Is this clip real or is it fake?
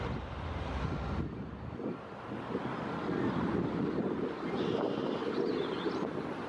real